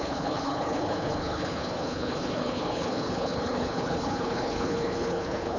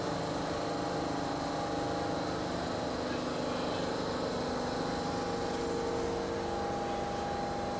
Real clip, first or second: second